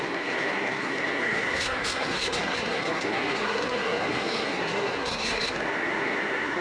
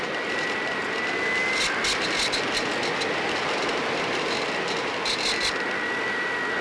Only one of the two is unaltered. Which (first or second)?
second